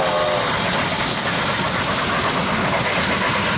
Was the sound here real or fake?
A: real